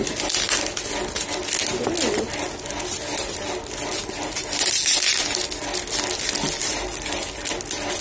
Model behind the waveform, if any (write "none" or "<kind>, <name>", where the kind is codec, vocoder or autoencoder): none